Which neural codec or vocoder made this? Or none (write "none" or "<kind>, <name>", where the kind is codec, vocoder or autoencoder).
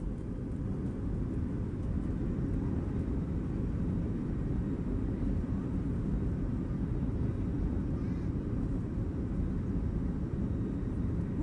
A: none